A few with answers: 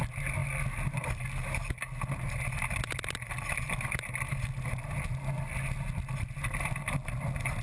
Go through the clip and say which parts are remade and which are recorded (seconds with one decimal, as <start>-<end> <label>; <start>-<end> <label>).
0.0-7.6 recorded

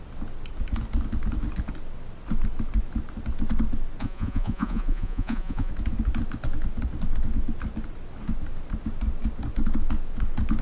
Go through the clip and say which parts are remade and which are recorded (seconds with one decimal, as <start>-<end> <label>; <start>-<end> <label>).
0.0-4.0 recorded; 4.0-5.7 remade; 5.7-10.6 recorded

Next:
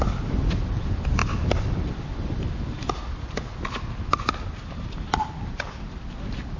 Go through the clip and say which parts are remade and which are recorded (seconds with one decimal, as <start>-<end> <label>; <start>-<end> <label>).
0.0-6.6 recorded

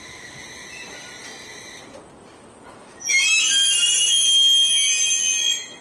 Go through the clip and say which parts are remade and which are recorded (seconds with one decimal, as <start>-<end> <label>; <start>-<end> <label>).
0.0-5.8 recorded

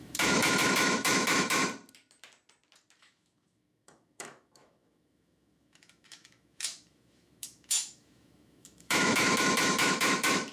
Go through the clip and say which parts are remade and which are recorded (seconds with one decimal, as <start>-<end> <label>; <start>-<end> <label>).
0.0-1.6 remade; 1.6-3.0 recorded; 3.0-10.5 remade

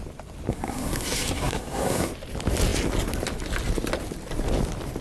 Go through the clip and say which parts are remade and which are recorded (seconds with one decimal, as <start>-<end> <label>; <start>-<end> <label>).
0.0-0.5 recorded; 0.5-2.1 remade; 2.1-5.0 recorded